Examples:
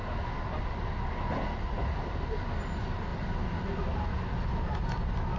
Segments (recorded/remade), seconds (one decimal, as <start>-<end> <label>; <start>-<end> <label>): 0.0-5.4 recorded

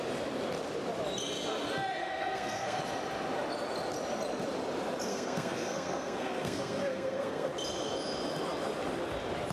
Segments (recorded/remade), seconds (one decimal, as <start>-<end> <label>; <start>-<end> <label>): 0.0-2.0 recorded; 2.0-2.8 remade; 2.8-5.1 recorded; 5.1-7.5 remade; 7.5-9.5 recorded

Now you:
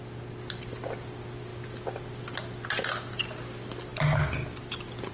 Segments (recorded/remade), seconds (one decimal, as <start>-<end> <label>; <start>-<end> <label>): 0.0-5.1 recorded